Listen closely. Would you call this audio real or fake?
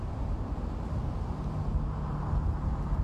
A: real